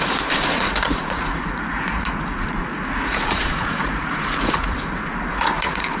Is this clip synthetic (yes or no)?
yes